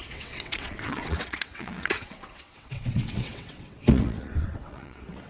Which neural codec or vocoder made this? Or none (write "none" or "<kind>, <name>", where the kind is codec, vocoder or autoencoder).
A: vocoder, WaveNeXt